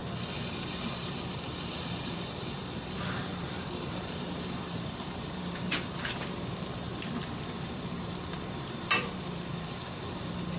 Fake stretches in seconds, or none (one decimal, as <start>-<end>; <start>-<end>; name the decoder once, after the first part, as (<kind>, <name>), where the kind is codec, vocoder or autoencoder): 0.7-6.9 (vocoder, BigVGAN v2); 7.7-10.6